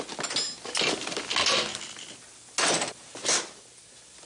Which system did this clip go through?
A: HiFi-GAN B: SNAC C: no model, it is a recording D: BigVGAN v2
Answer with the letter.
C